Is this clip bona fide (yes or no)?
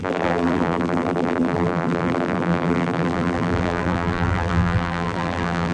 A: no